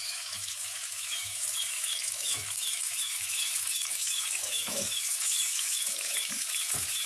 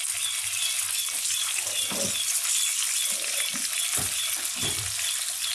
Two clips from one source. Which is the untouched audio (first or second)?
second